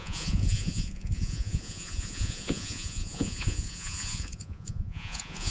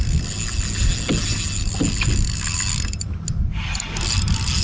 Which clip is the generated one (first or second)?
first